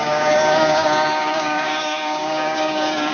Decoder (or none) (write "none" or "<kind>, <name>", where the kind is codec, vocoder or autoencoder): codec, DAC